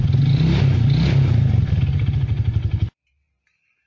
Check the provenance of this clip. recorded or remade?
recorded